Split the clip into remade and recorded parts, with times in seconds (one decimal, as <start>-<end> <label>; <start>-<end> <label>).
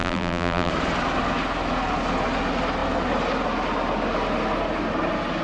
0.0-0.7 remade; 0.7-5.4 recorded